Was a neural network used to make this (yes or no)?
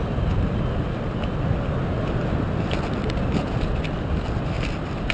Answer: no